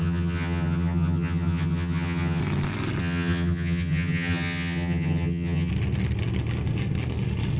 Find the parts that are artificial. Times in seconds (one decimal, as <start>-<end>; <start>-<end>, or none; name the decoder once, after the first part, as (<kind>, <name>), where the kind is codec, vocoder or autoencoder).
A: 0.0-2.4 (vocoder, HiFi-GAN); 3.0-5.7